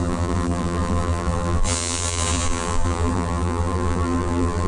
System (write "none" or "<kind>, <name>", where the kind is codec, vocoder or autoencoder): vocoder, BigVGAN v2